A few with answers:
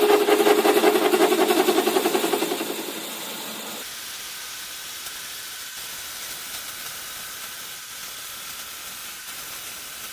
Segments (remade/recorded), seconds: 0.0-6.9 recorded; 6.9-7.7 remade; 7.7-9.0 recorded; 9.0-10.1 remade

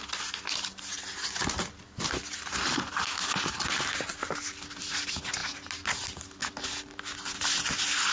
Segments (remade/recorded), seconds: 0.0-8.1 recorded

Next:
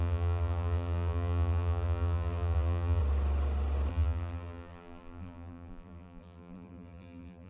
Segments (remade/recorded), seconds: 0.0-3.0 remade; 3.0-3.9 recorded; 3.9-7.5 remade